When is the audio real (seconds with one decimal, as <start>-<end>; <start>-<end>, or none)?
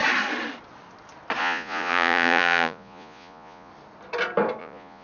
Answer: 0.0-1.4; 3.7-4.6